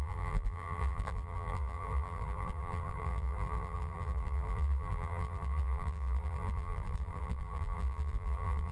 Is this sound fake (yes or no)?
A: yes